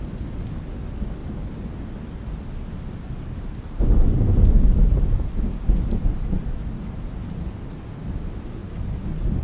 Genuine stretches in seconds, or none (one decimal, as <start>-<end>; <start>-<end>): 0.0-9.4